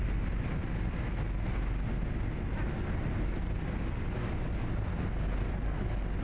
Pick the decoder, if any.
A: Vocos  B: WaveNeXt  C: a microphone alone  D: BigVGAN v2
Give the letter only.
C